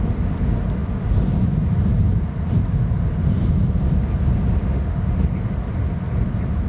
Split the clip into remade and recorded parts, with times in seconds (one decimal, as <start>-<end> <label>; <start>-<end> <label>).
0.0-4.6 recorded; 4.6-5.2 remade; 5.2-6.7 recorded